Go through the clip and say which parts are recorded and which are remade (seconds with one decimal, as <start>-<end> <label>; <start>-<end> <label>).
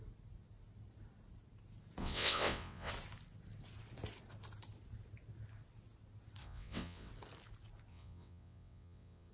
0.0-2.0 recorded; 2.0-2.9 remade; 2.9-6.4 recorded; 6.4-7.1 remade; 7.1-7.9 recorded; 7.9-9.3 remade